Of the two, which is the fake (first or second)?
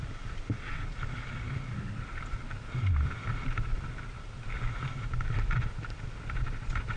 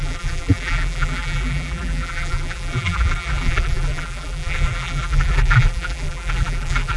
second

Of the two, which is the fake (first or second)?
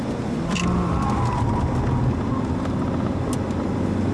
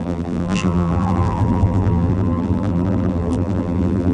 second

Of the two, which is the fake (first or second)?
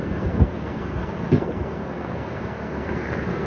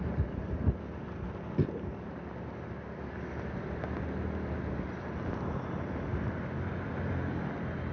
first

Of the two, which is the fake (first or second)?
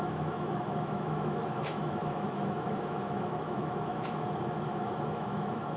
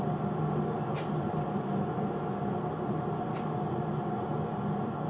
first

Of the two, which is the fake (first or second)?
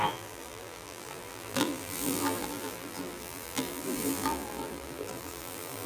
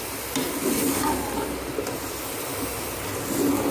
first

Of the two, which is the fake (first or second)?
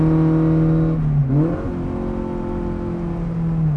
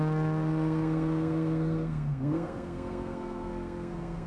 second